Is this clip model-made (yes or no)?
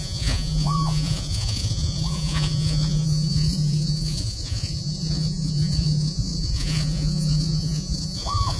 yes